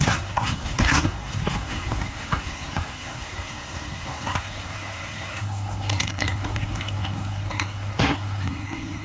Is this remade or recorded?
remade